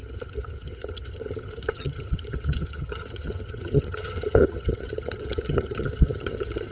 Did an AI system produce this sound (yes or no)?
yes